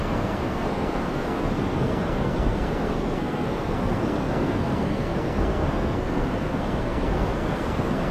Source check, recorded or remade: remade